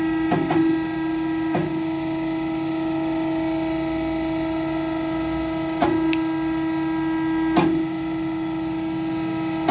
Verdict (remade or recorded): recorded